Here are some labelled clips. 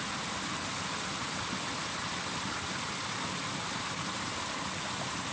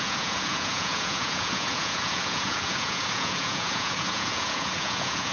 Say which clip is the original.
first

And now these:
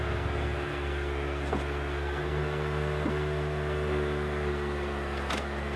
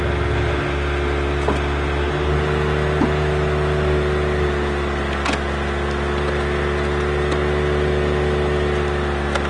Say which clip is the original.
second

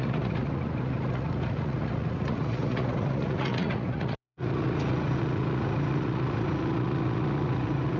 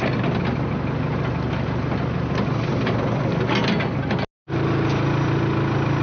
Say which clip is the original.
second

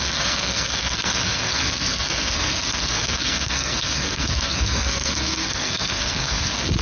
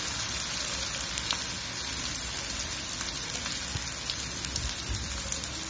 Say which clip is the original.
second